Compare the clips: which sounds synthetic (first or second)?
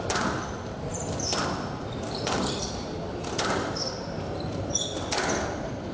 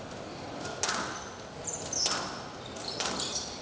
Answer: first